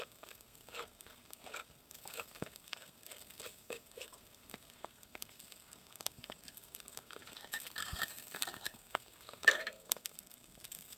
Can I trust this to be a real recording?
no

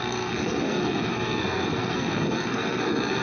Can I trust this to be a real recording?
no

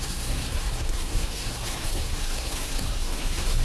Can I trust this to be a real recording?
no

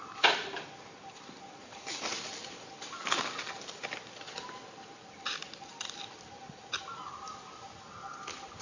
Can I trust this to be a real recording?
yes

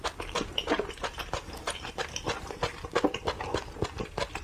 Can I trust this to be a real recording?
yes